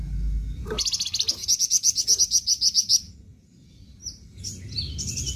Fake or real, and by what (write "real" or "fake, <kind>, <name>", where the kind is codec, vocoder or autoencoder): real